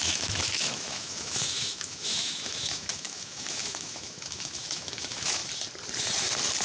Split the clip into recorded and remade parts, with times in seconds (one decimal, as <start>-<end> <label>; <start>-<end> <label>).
0.0-5.4 remade; 5.4-6.6 recorded